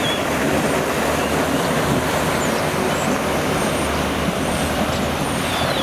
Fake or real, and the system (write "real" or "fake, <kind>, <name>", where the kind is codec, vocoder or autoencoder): real